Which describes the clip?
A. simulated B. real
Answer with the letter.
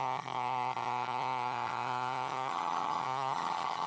A